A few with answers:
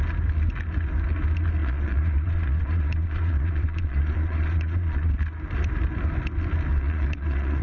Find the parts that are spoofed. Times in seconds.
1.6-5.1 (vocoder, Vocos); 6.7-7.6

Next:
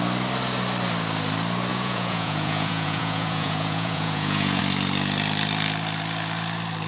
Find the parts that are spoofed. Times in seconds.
1.7-4.6 (vocoder, Vocos)